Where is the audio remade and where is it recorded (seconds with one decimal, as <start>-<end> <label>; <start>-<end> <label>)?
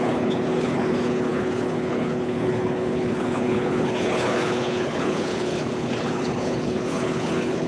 0.0-7.7 remade